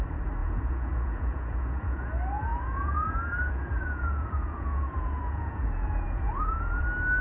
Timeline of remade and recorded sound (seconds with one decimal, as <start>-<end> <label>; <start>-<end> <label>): 0.0-0.4 recorded; 0.4-2.1 remade; 2.1-2.5 recorded; 2.5-6.8 remade; 6.8-7.2 recorded